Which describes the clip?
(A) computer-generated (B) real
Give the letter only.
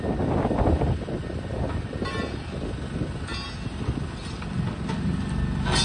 B